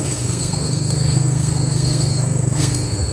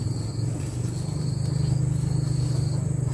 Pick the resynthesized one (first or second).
first